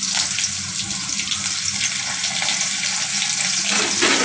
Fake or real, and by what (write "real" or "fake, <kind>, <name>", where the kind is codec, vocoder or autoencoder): real